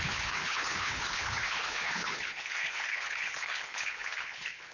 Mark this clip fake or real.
fake